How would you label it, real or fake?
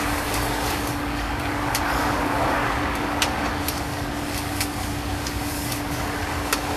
fake